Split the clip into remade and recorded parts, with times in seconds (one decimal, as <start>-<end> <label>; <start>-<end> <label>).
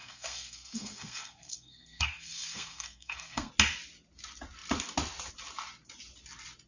0.0-3.5 remade; 3.5-6.7 recorded